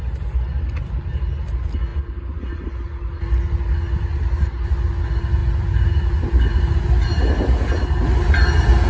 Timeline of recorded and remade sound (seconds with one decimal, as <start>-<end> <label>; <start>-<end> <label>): 0.0-8.9 recorded